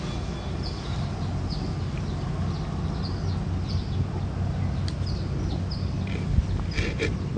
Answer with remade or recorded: recorded